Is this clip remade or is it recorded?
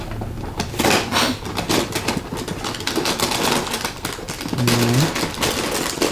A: recorded